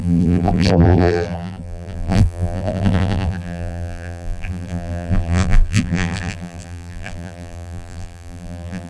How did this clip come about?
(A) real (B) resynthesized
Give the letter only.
B